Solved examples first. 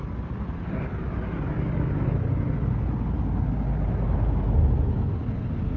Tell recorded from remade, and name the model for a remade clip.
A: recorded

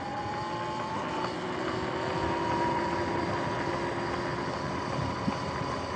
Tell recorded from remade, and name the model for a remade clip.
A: recorded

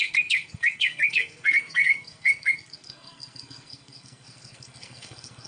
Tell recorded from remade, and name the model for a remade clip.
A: remade, codec, SNAC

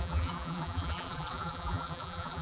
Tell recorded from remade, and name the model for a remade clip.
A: remade, vocoder, BigVGAN v2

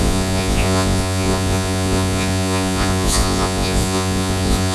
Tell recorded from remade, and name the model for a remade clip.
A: remade, vocoder, Vocos